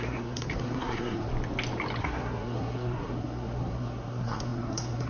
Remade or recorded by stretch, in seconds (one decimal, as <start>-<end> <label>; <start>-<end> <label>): 0.0-1.3 remade; 1.3-2.0 recorded; 2.0-5.1 remade